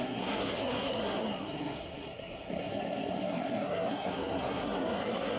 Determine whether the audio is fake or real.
fake